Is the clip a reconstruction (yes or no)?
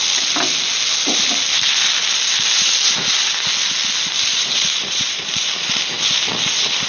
no